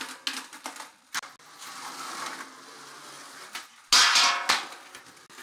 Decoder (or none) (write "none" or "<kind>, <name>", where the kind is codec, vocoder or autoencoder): none